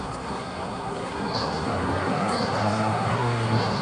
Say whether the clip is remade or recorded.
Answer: remade